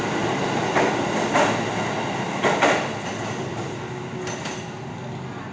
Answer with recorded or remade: recorded